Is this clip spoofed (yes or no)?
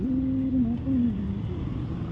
no